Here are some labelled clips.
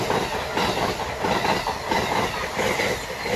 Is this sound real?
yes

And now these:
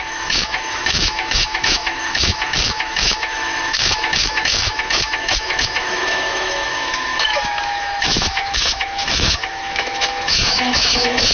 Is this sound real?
no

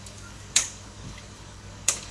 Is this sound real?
no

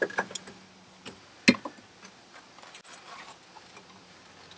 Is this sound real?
yes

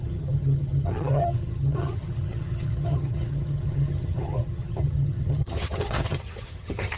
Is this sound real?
no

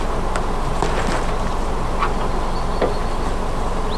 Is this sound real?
yes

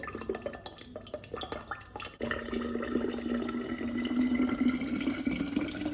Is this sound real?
yes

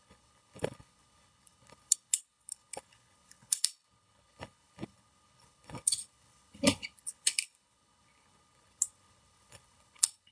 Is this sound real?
no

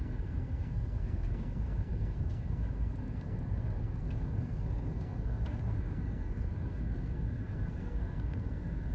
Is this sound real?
no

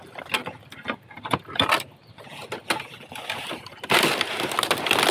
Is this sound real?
yes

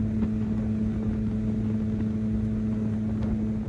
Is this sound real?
yes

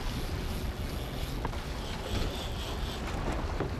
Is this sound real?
yes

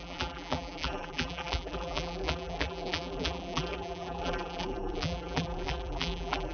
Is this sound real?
no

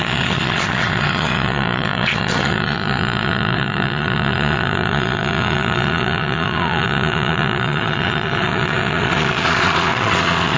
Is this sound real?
no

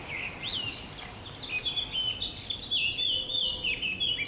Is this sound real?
yes